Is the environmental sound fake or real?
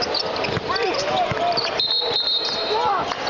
real